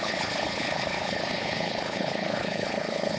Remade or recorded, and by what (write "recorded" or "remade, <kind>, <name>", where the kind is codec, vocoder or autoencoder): remade, codec, HILCodec